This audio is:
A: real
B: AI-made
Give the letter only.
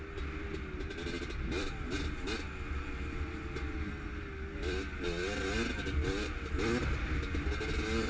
A